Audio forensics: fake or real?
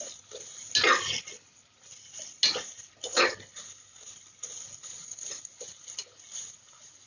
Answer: real